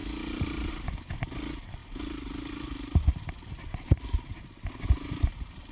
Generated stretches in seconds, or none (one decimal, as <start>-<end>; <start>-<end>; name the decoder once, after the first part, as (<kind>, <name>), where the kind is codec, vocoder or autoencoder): 0.0-0.7 (vocoder, BigVGAN v2); 1.8-3.0